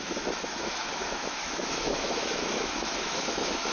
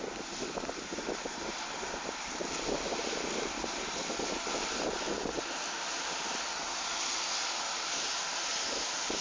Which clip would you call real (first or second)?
second